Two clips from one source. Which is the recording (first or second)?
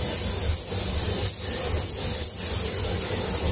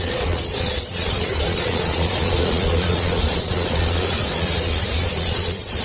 first